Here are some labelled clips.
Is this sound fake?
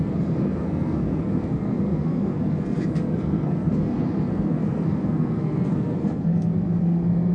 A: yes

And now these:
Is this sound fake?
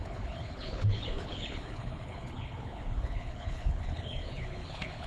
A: yes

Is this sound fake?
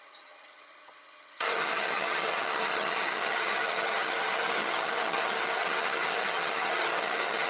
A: yes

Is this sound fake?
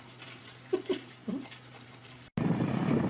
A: no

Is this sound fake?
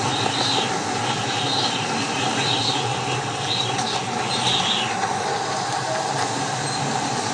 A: no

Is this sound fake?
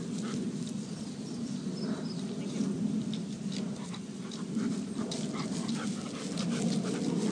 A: no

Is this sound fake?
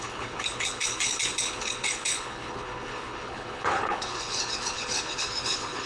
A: yes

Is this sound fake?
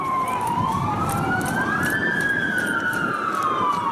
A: yes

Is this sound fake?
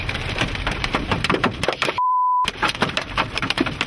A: yes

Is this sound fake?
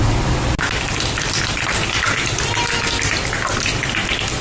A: no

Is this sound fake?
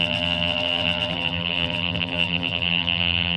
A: yes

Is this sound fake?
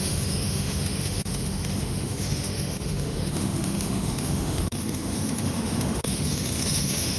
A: yes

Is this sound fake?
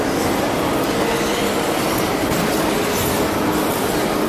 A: no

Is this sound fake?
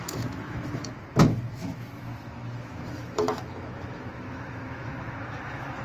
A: yes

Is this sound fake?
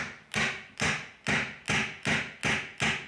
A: no